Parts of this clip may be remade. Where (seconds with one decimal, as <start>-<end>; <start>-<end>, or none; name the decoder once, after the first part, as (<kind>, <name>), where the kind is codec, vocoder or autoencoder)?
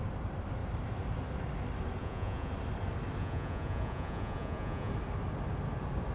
2.0-2.5 (vocoder, Vocos); 3.2-4.9